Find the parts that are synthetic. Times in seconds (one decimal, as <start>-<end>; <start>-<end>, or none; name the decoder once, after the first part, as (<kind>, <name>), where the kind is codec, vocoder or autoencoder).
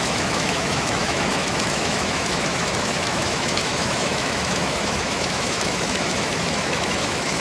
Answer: 0.0-7.4 (autoencoder, DAC-VAE)